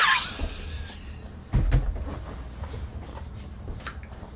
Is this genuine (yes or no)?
yes